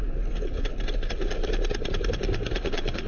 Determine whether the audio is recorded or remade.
recorded